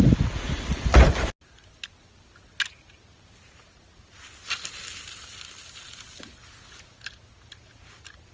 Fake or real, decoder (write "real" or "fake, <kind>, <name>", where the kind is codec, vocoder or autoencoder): real